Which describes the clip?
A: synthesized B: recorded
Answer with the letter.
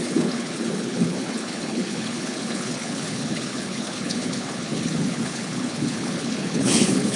A